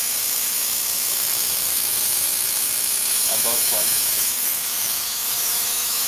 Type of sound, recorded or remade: remade